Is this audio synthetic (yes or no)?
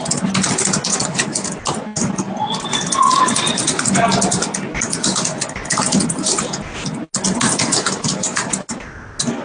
no